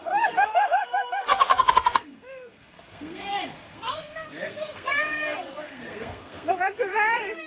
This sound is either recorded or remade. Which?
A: remade